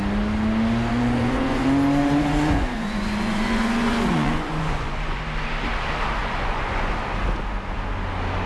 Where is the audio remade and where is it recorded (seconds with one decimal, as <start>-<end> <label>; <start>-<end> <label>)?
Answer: 0.0-0.9 recorded; 0.9-5.2 remade; 5.2-6.2 recorded; 6.2-6.9 remade; 6.9-8.5 recorded